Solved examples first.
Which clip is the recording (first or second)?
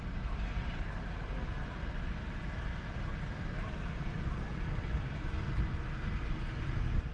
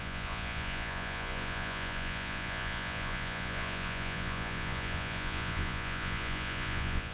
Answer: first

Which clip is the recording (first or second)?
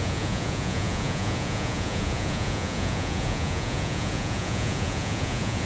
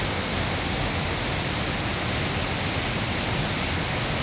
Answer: second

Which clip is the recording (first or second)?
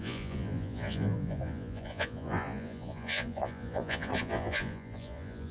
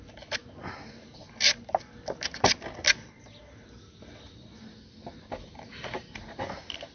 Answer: second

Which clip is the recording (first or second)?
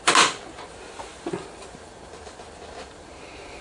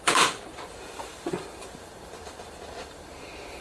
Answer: first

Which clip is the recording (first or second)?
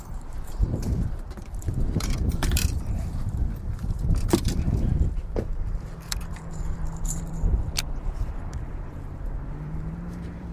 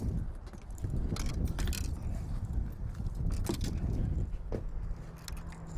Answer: second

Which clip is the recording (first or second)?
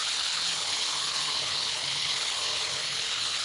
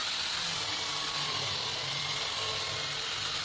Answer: second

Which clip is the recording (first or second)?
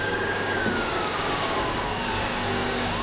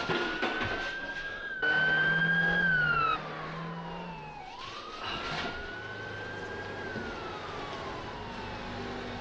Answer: second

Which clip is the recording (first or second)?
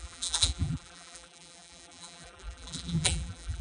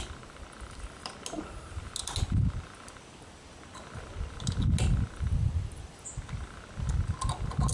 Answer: second